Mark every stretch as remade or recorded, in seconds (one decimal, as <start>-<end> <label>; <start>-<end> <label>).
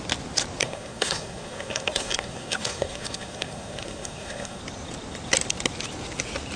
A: 0.0-0.6 recorded; 0.6-4.6 remade; 4.6-6.6 recorded